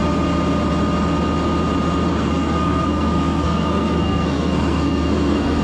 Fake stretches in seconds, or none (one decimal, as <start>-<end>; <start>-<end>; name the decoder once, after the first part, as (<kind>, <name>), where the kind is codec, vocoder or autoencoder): 2.1-5.6 (codec, SNAC)